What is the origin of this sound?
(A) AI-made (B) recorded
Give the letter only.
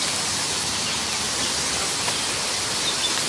B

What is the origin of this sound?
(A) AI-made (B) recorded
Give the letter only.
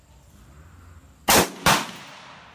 B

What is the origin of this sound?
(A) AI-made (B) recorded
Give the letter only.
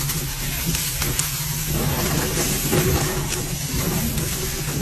B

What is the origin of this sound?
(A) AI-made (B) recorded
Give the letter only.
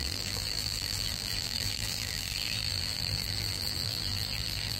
A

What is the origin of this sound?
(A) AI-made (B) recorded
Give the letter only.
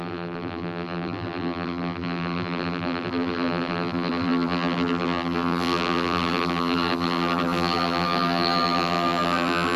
A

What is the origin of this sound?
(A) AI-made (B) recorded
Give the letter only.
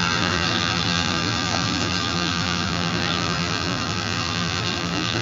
A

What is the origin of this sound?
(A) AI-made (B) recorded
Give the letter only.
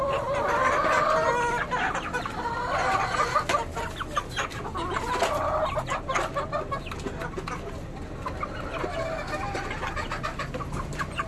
B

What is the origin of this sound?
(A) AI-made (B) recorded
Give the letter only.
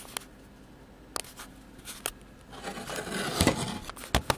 B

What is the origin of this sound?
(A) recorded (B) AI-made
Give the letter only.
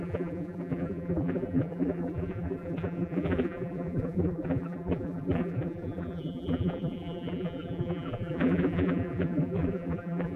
B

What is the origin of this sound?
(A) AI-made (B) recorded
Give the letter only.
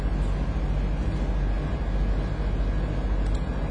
B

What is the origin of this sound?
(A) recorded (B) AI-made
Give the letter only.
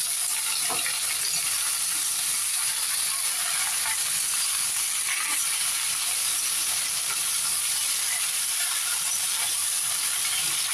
B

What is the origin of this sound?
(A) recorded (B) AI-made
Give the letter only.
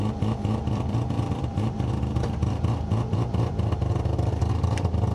B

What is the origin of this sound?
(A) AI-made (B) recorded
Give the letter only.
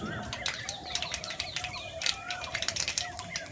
A